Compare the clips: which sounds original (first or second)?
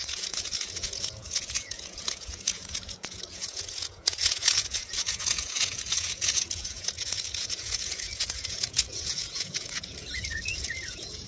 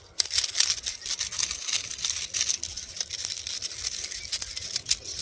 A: second